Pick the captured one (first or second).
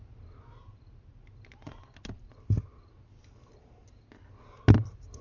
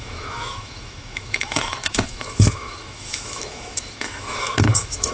first